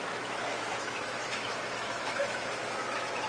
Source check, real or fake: fake